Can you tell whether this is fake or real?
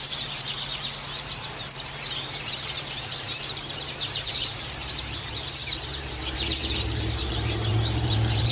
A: fake